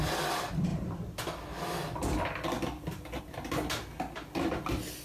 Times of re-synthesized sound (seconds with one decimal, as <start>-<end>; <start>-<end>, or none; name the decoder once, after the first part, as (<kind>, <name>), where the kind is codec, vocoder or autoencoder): none